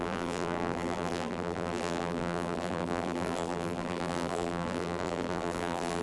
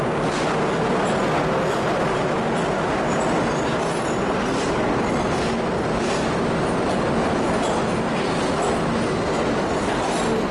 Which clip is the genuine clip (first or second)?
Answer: second